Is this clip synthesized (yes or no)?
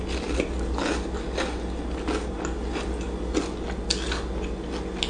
no